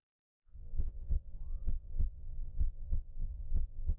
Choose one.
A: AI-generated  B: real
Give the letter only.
A